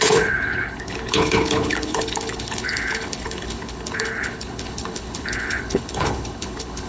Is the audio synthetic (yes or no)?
yes